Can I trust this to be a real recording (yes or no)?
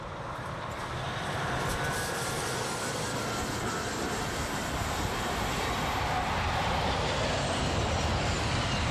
yes